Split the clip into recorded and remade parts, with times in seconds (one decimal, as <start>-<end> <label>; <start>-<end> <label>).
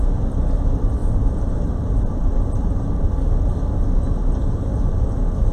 0.0-1.0 recorded; 1.0-3.1 remade; 3.1-5.5 recorded